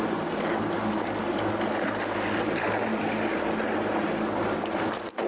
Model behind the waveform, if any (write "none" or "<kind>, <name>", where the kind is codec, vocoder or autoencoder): none